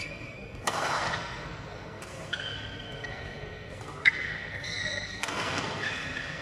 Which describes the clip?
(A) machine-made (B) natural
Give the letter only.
A